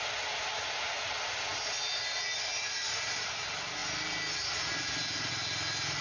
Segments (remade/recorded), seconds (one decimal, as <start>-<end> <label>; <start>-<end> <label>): 0.0-2.6 recorded; 2.6-3.3 remade; 3.3-6.0 recorded